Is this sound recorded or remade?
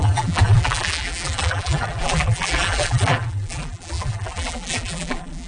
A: remade